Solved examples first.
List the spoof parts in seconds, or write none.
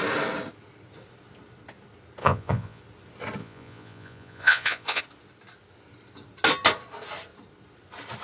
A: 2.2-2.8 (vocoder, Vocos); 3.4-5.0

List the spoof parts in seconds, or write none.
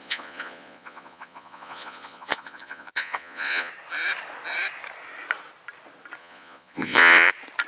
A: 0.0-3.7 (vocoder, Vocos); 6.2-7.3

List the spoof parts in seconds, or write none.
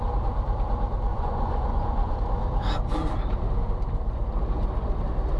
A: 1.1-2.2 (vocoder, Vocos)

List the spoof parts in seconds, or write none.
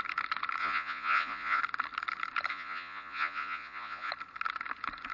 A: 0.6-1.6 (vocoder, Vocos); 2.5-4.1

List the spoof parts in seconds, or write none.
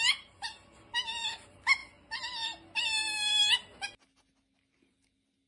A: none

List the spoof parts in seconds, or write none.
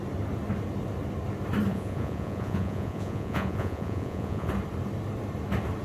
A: 1.7-4.5 (vocoder, Vocos)